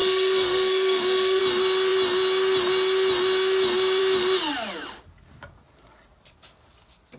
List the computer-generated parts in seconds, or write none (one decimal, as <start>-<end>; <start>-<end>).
0.0-1.4